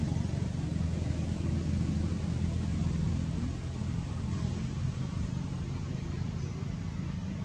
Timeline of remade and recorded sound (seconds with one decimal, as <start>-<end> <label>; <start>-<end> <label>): 0.0-2.7 recorded; 2.7-3.3 remade; 3.3-3.8 recorded; 3.8-4.5 remade; 4.5-7.4 recorded